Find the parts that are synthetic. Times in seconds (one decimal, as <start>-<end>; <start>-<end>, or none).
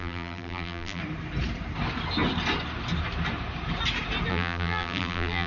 0.0-1.0; 4.3-5.5